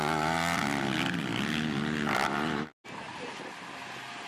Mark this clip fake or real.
real